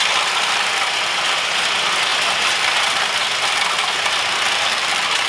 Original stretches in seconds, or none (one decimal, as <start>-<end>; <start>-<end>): 0.0-5.3